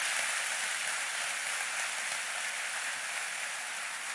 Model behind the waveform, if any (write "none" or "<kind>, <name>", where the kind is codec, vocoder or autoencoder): none